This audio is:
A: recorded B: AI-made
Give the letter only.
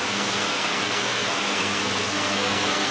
B